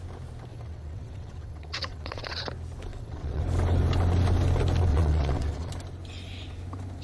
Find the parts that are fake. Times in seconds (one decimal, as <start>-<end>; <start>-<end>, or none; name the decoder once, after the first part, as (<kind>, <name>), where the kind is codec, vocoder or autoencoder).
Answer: 0.5-2.4 (vocoder, WaveNeXt); 2.9-3.4; 4.9-5.7